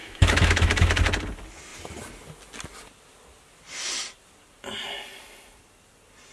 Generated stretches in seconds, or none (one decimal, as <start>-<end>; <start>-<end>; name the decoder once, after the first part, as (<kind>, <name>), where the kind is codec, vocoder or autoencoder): 0.0-1.0 (autoencoder, DAC-VAE)